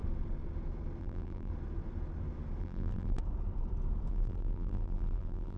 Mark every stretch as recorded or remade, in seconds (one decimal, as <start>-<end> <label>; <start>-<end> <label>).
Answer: 0.0-1.0 recorded; 1.0-1.5 remade; 1.5-2.6 recorded; 2.6-3.2 remade; 3.2-4.1 recorded; 4.1-5.6 remade